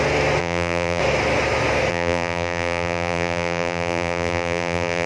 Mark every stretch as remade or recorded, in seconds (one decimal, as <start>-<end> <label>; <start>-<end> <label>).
0.0-0.4 recorded; 0.4-1.0 remade; 1.0-1.9 recorded; 1.9-5.1 remade